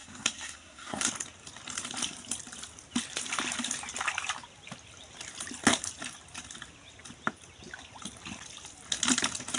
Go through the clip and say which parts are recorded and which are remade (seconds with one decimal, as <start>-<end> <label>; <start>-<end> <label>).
0.0-1.1 remade; 1.1-9.6 recorded